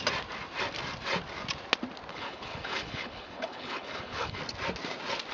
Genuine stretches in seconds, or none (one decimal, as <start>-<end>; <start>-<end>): 0.0-2.1; 4.4-5.3